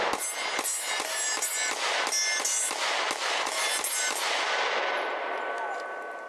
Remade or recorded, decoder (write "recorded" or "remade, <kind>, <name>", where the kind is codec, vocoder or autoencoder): recorded